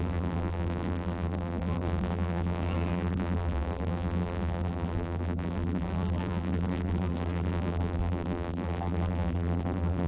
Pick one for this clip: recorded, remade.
remade